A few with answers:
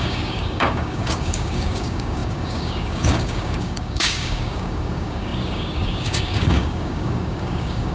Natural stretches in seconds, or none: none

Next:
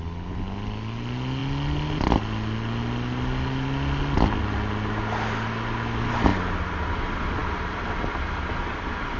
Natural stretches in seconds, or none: 0.0-9.2

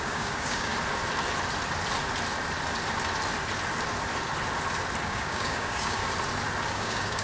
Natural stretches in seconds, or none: 0.7-5.0; 6.0-6.7

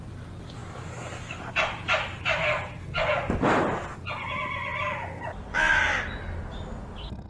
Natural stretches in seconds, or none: 0.0-7.3

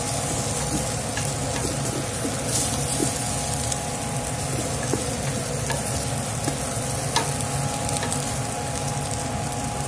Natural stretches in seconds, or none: 0.0-9.9